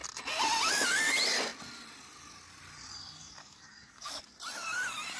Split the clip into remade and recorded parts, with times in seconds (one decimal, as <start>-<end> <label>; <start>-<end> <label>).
0.0-2.9 recorded; 2.9-4.2 remade; 4.2-5.2 recorded

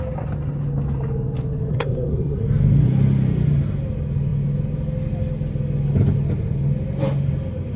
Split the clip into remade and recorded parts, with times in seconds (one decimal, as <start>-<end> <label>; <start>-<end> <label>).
0.0-1.7 recorded; 1.7-2.4 remade; 2.4-7.8 recorded

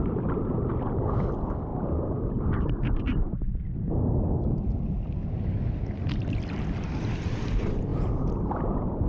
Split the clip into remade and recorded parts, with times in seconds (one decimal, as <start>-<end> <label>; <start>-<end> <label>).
0.0-1.7 remade; 1.7-6.3 recorded; 6.3-9.1 remade

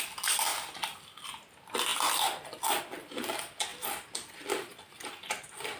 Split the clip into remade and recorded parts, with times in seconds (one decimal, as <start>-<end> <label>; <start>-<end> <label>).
0.0-0.5 recorded; 0.5-1.2 remade; 1.2-1.9 recorded; 1.9-2.8 remade; 2.8-5.8 recorded

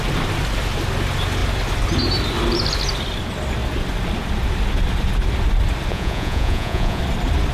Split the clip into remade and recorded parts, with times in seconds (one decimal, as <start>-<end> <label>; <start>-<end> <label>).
0.0-5.9 recorded; 5.9-7.0 remade; 7.0-7.5 recorded

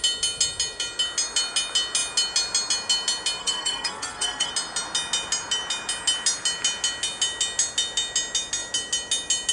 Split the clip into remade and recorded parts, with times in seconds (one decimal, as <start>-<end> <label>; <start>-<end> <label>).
0.0-3.4 recorded; 3.4-4.5 remade; 4.5-9.5 recorded